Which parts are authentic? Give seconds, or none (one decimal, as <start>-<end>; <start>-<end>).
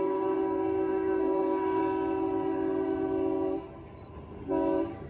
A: 1.8-5.1